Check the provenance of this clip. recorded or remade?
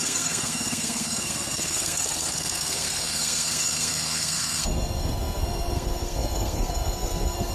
remade